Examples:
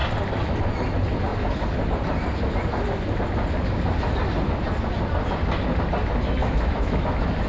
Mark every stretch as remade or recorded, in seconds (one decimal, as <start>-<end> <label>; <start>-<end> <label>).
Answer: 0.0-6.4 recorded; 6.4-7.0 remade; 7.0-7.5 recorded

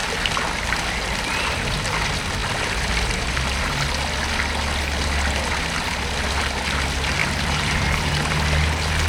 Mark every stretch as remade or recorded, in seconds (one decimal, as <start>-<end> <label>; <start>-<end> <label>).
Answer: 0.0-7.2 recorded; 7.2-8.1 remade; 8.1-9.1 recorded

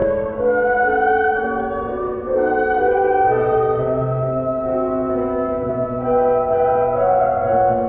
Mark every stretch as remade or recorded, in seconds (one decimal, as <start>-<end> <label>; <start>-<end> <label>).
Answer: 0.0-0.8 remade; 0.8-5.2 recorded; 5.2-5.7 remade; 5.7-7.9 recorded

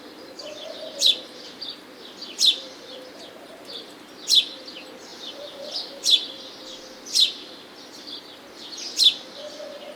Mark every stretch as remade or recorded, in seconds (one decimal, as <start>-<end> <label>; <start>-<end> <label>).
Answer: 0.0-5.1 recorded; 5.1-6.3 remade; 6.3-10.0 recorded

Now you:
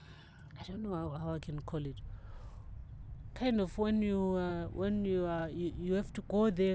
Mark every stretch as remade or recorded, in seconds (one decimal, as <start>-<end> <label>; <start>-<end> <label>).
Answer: 0.0-1.4 remade; 1.4-6.7 recorded

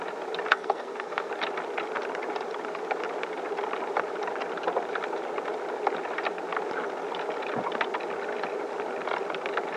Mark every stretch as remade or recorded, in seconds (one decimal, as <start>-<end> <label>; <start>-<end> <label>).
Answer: 0.0-0.5 recorded; 0.5-1.3 remade; 1.3-9.8 recorded